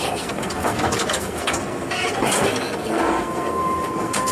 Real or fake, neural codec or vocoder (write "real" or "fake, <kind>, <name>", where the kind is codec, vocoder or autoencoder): fake, codec, SNAC